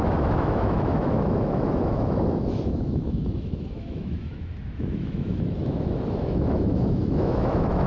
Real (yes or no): no